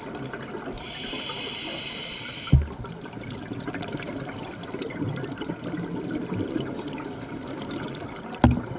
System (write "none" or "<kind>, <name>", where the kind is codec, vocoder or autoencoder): none